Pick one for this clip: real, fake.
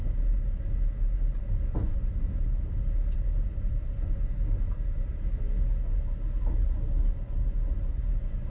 real